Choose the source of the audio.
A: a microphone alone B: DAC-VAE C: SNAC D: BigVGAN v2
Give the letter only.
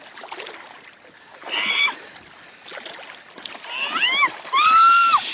A